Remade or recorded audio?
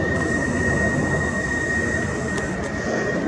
recorded